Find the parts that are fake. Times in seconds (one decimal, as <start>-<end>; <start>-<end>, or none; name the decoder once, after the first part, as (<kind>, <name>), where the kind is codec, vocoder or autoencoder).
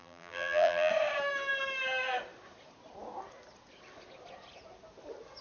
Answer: 0.0-0.9 (vocoder, BigVGAN v2)